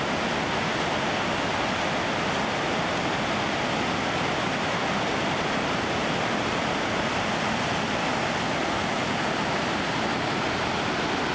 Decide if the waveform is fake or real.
real